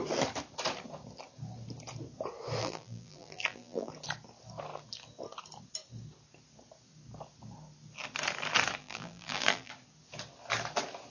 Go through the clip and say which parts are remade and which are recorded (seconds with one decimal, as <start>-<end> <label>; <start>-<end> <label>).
0.0-2.6 recorded; 2.6-3.9 remade; 3.9-8.8 recorded; 8.8-9.7 remade; 9.7-11.1 recorded

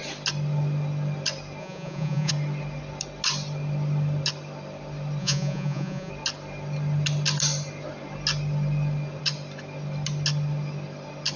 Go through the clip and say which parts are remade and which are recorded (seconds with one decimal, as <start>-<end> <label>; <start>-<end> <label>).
0.0-1.6 recorded; 1.6-2.3 remade; 2.3-5.2 recorded; 5.2-6.1 remade; 6.1-11.4 recorded